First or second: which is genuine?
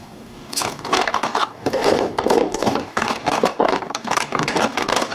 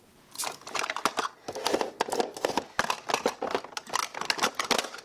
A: second